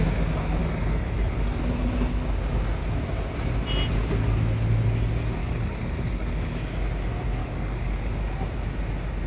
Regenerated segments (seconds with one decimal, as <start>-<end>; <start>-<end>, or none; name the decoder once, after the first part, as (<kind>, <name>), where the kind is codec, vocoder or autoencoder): 0.6-1.6 (codec, DAC); 5.4-6.6; 7.4-8.2